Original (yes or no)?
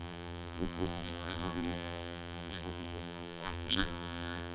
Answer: no